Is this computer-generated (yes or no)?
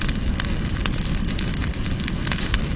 no